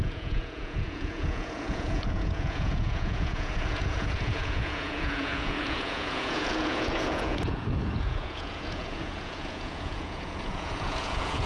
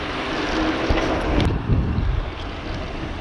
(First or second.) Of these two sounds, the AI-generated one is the first